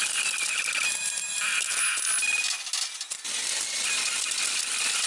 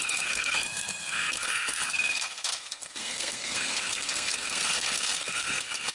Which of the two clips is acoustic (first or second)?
first